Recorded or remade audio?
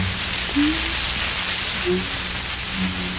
recorded